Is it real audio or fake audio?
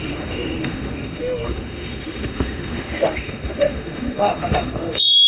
fake